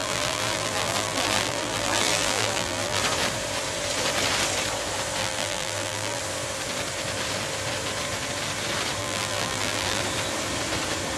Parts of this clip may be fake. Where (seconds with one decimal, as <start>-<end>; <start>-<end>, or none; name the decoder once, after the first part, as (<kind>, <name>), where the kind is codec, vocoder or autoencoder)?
0.0-3.0 (vocoder, BigVGAN v2); 5.2-6.2; 9.0-10.0